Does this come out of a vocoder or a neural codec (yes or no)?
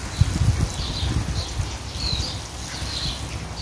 no